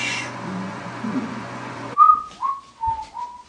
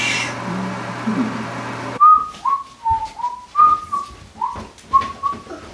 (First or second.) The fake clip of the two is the first